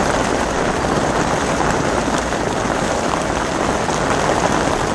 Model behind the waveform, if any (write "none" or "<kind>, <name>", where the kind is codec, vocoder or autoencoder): none